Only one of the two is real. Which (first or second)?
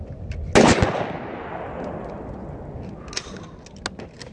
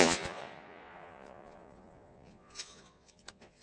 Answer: first